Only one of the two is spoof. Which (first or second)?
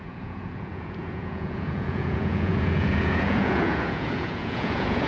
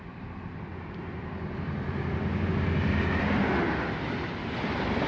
first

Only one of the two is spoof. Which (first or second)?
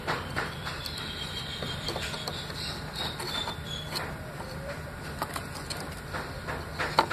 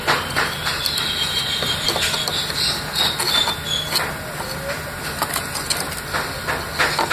first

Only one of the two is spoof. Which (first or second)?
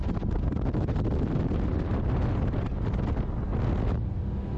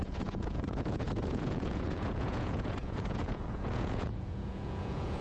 second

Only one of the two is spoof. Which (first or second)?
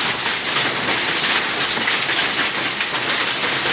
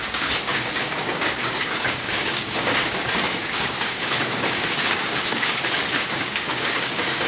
second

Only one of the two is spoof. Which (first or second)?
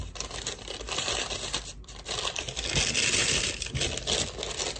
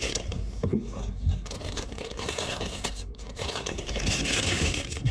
second